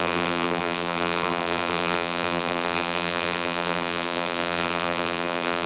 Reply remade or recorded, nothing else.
remade